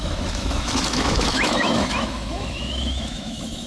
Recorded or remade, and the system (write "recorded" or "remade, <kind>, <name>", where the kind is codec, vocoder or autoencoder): remade, autoencoder, DAC-VAE